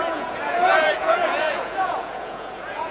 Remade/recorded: remade